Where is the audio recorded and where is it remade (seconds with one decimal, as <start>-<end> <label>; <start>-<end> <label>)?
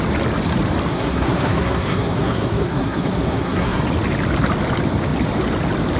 0.0-0.9 recorded; 0.9-3.8 remade; 3.8-6.0 recorded